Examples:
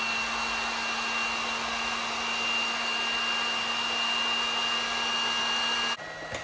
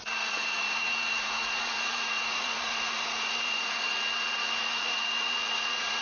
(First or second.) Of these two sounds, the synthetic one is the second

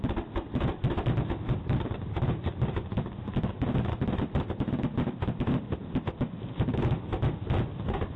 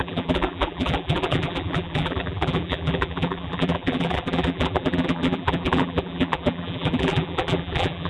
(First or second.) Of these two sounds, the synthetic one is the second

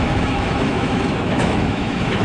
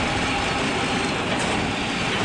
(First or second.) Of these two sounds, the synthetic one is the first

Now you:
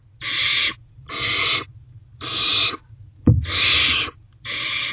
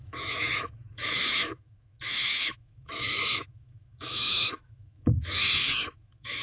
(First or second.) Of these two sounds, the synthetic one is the second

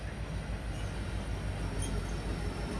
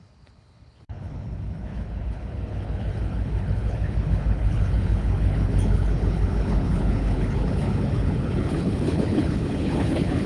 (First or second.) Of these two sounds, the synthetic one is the second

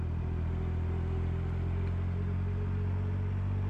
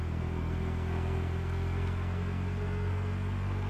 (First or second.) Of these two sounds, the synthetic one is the second